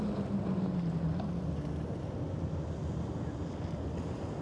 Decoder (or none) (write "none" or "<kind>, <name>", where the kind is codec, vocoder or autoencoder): none